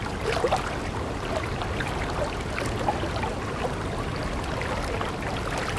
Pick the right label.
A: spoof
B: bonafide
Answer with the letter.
B